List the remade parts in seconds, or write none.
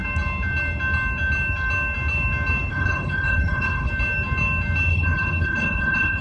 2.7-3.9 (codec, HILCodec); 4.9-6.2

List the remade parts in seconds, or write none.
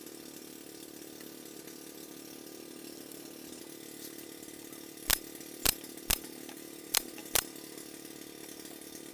none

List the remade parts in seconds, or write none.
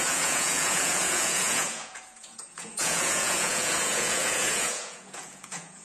0.0-5.8 (vocoder, Vocos)